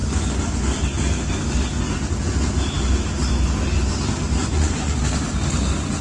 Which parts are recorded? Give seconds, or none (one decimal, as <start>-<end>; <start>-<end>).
0.0-4.4; 5.0-6.0